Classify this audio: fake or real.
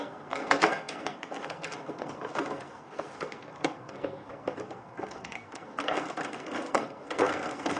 fake